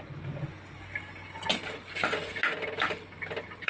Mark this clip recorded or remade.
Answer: recorded